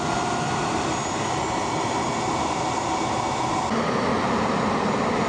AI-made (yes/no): no